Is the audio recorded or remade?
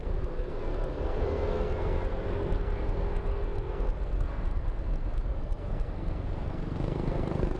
remade